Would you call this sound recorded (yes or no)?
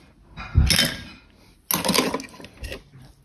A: yes